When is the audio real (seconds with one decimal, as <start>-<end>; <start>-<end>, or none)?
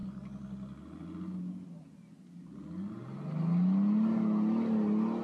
0.0-5.2